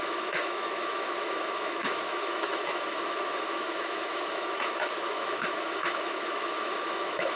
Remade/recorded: remade